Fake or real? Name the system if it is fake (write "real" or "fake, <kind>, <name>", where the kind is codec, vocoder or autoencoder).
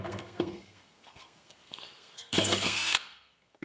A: fake, codec, SNAC